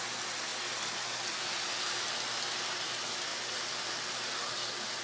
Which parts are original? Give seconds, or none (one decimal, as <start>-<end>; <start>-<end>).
0.0-5.0